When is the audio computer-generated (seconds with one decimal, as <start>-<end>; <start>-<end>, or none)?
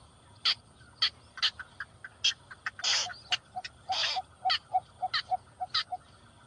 none